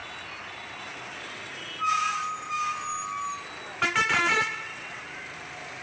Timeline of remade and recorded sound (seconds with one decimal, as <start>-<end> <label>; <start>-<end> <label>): 0.0-4.1 recorded; 4.1-5.0 remade; 5.0-5.8 recorded